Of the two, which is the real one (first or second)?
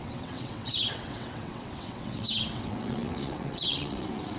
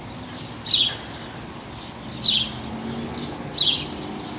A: second